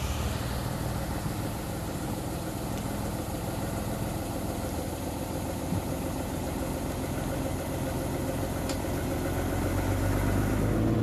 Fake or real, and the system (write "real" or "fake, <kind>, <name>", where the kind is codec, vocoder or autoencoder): real